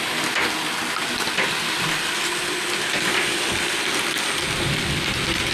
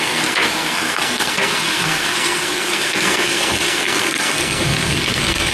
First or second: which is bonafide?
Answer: first